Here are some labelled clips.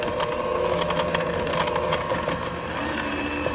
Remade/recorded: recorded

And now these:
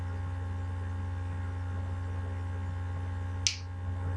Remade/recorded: recorded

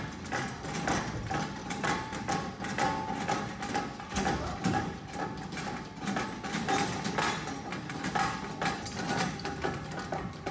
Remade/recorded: recorded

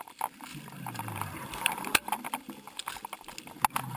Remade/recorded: recorded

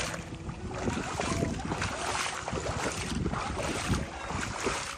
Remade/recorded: recorded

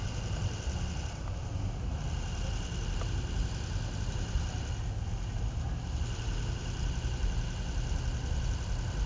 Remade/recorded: recorded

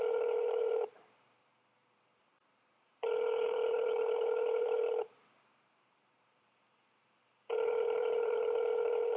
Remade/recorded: remade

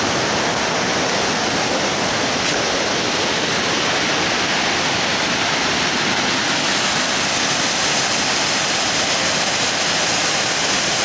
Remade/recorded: recorded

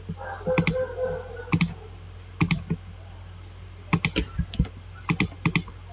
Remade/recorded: recorded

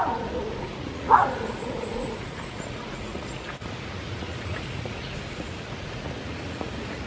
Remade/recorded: remade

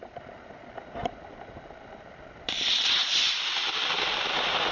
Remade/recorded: remade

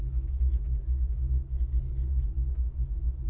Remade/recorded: recorded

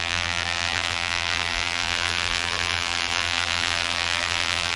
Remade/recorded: remade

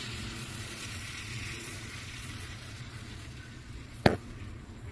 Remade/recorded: remade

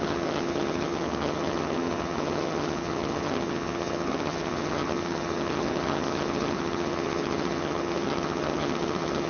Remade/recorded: remade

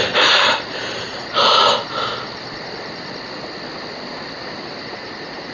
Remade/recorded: recorded